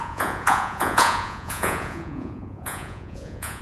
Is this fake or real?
fake